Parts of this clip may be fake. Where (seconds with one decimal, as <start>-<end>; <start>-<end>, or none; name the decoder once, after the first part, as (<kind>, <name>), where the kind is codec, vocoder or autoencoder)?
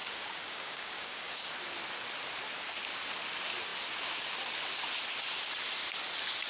0.0-1.5 (codec, DAC)